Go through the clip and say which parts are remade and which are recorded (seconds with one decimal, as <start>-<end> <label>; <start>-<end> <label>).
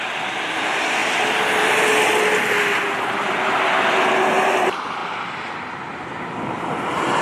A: 0.0-5.0 recorded; 5.0-7.2 remade